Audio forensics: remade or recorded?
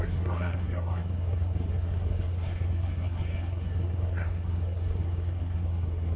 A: remade